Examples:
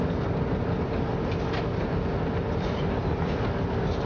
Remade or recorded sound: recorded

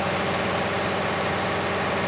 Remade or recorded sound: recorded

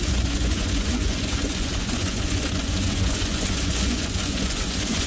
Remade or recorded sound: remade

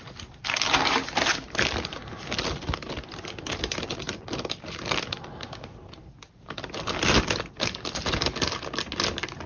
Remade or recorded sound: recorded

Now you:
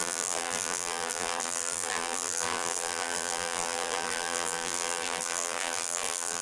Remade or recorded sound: remade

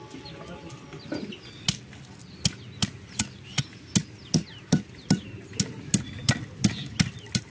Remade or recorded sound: recorded